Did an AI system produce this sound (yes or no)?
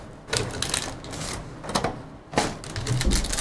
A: no